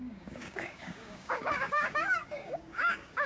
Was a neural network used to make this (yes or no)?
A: yes